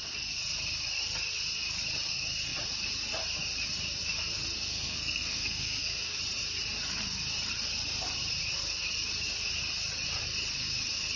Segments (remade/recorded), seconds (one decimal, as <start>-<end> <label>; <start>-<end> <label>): 0.0-4.7 recorded; 4.7-6.2 remade; 6.2-11.2 recorded